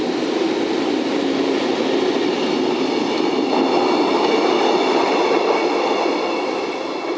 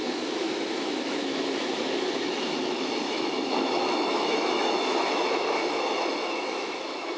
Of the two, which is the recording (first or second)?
first